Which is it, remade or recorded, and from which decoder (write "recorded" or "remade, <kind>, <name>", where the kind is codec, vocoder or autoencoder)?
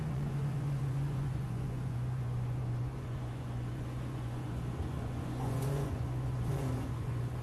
remade, vocoder, Vocos